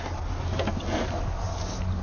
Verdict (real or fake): real